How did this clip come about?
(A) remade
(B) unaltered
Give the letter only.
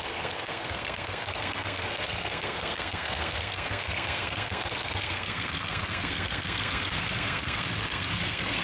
A